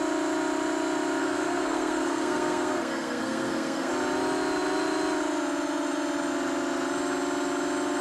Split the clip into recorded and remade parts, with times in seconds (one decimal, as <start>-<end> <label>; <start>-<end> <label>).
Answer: 0.0-1.2 recorded; 1.2-3.9 remade; 3.9-8.0 recorded